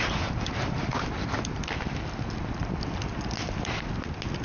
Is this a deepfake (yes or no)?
no